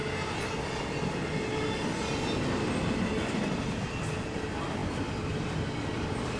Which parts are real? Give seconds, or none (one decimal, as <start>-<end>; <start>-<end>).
0.0-6.4